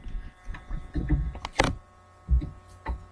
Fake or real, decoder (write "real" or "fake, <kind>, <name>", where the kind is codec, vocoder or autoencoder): real